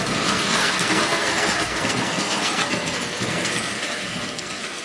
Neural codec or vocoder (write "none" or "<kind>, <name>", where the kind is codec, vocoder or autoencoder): codec, SNAC